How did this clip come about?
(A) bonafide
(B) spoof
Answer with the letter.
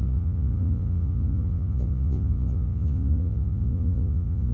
B